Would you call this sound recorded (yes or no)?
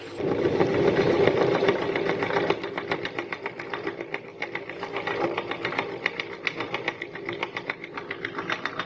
yes